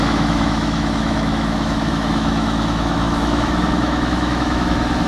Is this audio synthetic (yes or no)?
yes